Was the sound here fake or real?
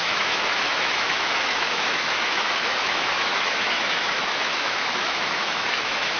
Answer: fake